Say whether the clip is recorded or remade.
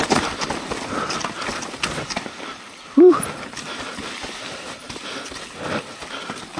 remade